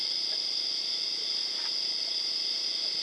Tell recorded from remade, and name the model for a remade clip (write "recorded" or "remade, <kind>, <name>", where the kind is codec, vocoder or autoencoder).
recorded